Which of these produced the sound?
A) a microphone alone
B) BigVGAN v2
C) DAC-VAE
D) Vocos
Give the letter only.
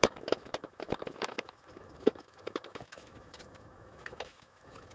C